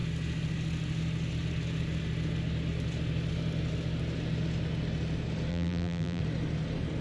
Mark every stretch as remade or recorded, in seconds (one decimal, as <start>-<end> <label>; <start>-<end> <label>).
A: 0.0-5.5 recorded; 5.5-6.2 remade; 6.2-7.0 recorded